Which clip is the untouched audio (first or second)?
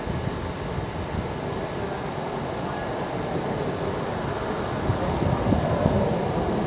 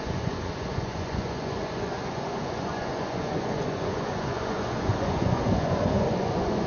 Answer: first